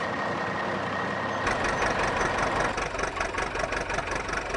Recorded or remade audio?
recorded